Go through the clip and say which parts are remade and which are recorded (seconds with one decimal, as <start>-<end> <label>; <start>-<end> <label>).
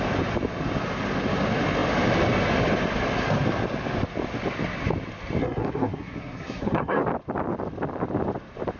0.0-5.4 recorded; 5.4-7.0 remade; 7.0-8.8 recorded